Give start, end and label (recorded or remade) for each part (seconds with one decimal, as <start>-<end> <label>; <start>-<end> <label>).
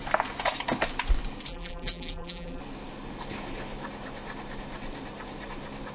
0.0-1.5 recorded; 1.5-2.6 remade; 2.6-5.9 recorded